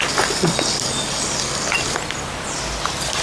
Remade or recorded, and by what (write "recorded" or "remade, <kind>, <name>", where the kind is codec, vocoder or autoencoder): recorded